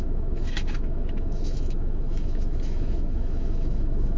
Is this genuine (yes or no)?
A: no